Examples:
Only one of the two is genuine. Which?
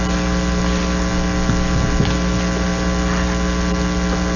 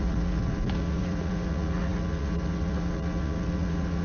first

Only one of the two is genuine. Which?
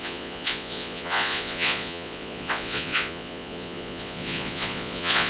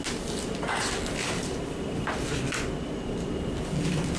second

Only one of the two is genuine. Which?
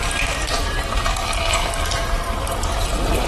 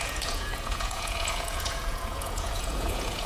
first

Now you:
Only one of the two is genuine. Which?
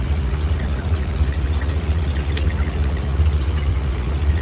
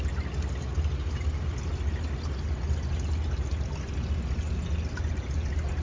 second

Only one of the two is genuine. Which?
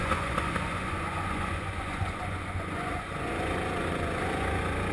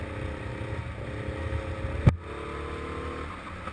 second